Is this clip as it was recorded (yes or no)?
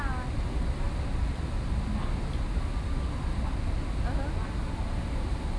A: yes